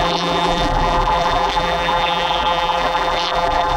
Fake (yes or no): yes